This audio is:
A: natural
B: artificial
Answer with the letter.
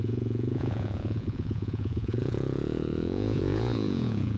B